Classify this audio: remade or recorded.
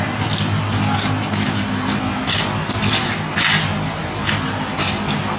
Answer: recorded